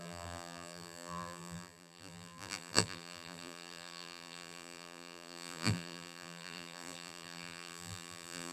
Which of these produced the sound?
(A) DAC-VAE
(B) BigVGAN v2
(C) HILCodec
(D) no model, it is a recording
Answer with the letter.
B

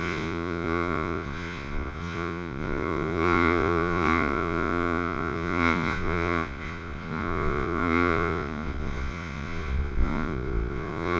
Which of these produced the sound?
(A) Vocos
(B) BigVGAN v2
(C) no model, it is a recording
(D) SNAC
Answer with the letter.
A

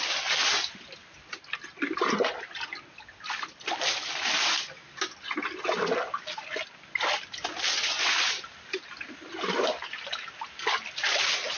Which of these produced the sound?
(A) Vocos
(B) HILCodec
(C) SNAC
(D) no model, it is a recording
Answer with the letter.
D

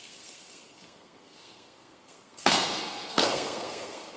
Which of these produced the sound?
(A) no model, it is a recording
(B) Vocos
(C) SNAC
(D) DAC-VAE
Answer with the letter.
C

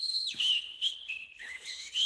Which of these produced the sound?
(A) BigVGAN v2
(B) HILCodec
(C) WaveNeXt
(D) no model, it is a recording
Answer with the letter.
B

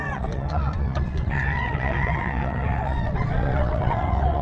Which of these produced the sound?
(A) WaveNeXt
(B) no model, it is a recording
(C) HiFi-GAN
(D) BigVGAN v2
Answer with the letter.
A